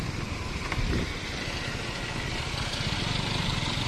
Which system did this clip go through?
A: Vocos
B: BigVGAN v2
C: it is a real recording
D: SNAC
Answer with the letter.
B